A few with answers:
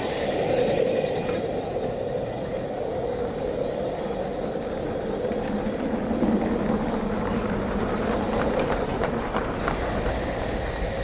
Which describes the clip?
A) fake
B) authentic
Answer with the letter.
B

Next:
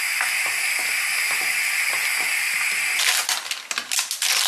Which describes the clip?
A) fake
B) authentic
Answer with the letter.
B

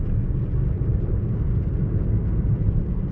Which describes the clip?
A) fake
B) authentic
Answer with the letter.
B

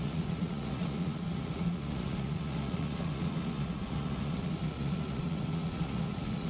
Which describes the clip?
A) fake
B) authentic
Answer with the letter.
A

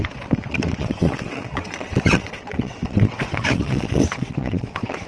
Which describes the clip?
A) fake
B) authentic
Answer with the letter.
A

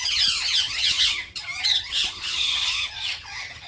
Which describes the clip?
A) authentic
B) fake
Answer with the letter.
B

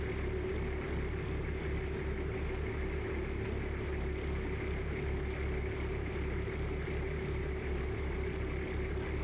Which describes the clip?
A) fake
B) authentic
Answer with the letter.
B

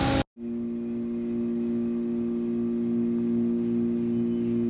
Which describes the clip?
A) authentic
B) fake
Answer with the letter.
A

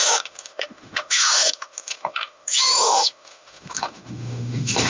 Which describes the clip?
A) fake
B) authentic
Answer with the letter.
A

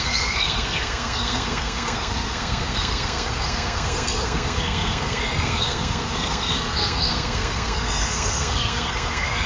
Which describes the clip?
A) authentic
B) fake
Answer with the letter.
B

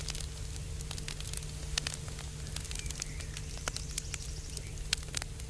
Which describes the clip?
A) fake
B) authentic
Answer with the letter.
B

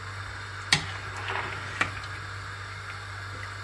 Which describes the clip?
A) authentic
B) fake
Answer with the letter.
B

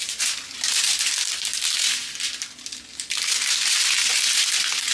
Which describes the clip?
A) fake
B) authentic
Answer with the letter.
B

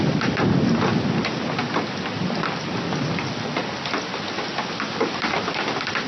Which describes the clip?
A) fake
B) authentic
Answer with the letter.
B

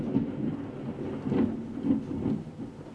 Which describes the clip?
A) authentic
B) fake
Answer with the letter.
A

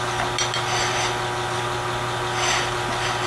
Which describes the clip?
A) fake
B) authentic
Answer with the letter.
B